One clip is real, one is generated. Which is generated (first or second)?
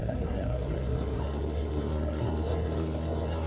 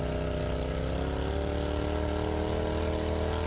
first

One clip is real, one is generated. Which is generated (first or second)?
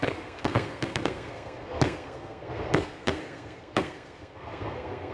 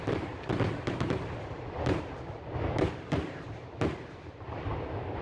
first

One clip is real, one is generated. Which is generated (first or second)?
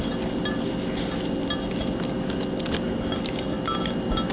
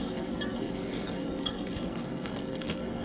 second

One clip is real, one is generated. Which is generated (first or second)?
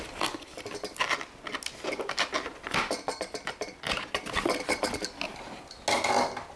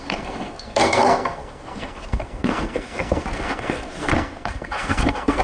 second